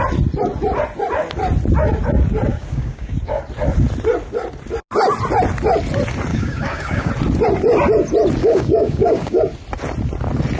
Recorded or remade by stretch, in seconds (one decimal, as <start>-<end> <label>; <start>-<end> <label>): 0.0-2.5 recorded; 2.5-3.4 remade; 3.4-6.3 recorded; 6.3-7.1 remade; 7.1-8.4 recorded; 8.4-9.4 remade; 9.4-10.6 recorded